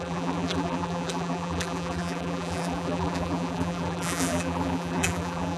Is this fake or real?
fake